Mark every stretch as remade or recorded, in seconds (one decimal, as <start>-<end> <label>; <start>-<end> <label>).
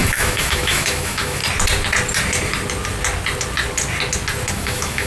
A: 0.0-1.4 remade; 1.4-4.5 recorded; 4.5-5.1 remade